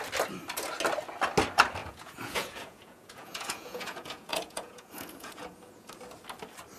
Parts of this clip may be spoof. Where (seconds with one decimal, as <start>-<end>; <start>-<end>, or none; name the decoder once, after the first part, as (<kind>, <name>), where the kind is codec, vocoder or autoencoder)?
1.8-5.9 (vocoder, Vocos)